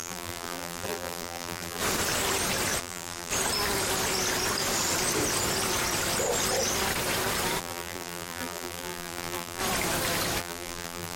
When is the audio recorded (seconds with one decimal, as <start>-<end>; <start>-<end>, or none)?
1.8-2.8; 3.3-7.6; 9.6-10.4